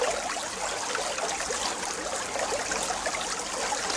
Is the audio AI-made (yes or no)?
no